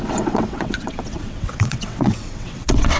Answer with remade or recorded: remade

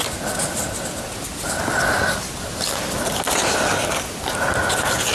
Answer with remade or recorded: recorded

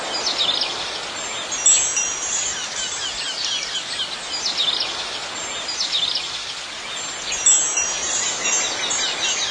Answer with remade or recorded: recorded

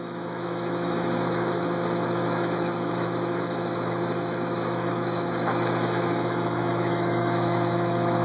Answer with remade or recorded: remade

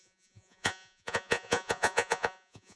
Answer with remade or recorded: remade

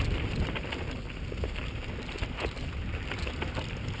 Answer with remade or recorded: recorded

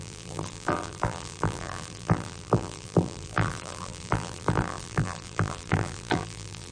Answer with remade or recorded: remade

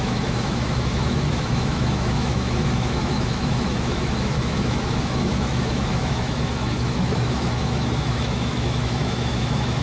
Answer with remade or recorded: remade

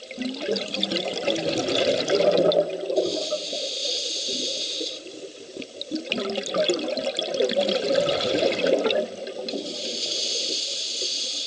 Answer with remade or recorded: recorded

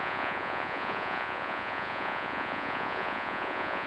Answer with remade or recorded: remade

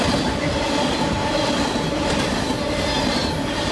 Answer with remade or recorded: recorded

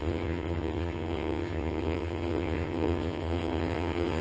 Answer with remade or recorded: remade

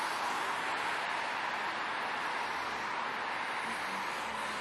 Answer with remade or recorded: recorded